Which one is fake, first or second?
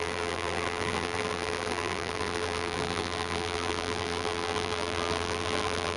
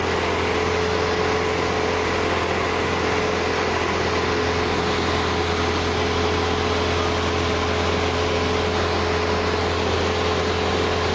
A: first